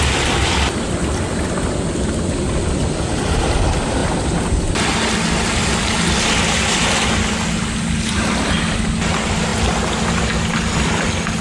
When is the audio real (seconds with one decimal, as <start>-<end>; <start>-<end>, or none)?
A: 0.0-11.4